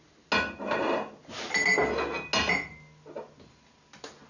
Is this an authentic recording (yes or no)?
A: yes